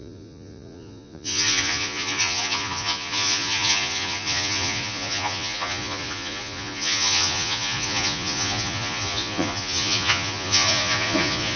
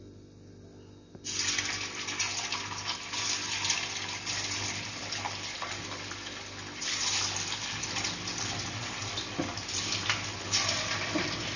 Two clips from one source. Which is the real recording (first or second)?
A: second